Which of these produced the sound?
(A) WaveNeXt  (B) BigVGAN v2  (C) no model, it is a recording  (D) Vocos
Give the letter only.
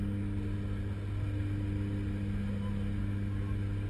C